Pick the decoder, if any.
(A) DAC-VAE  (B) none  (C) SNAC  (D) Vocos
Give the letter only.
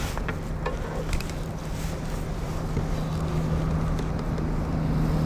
B